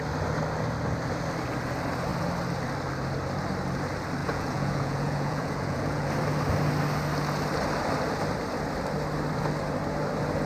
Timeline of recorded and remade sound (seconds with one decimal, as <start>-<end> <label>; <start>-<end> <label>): 0.0-4.2 recorded; 4.2-6.1 remade; 6.1-10.5 recorded